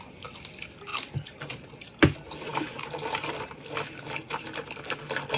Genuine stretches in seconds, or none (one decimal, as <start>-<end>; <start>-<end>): 0.0-5.4